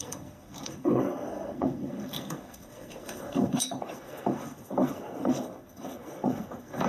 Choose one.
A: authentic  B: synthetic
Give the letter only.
B